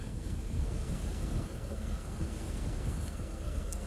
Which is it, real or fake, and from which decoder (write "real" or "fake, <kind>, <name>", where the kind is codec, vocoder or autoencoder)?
fake, codec, SNAC